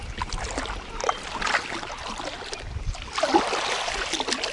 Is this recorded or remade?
recorded